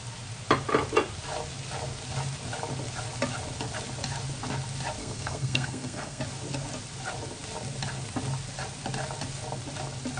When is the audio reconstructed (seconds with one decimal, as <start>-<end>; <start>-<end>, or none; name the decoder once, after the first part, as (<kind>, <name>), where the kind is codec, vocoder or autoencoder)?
5.0-6.2 (codec, SNAC)